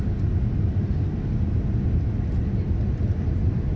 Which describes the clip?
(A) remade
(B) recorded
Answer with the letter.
B